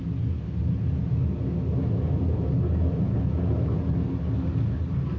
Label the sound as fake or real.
real